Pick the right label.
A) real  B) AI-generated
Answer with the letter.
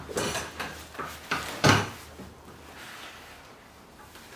A